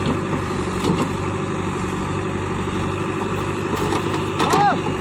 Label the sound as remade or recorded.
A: recorded